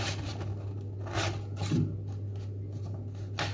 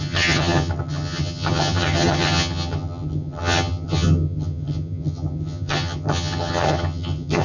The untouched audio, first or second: first